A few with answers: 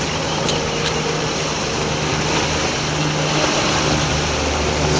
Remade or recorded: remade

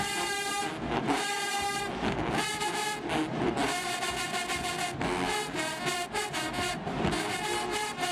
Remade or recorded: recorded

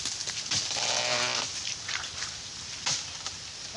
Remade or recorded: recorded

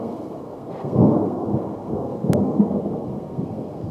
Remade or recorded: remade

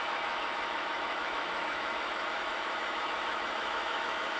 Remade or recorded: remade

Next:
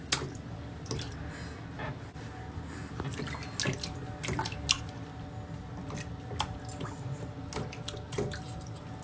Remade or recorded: recorded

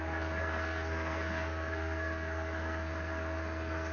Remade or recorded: remade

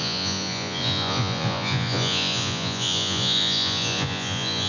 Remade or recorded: remade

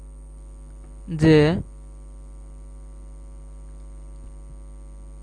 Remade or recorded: recorded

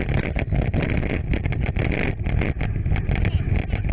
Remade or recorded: recorded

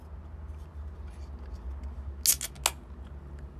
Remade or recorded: recorded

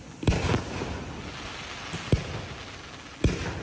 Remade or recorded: recorded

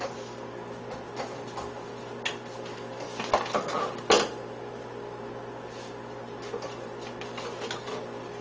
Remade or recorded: recorded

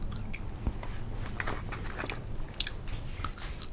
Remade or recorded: recorded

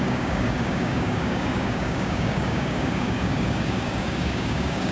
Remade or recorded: remade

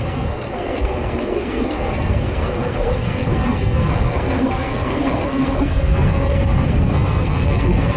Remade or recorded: remade